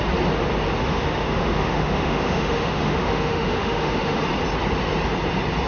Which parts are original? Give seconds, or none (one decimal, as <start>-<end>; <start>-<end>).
0.0-0.8; 4.2-5.7